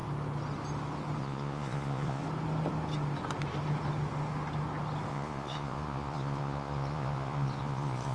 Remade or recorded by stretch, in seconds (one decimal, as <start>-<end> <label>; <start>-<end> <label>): 0.0-1.2 recorded; 1.2-2.2 remade; 2.2-5.1 recorded; 5.1-8.1 remade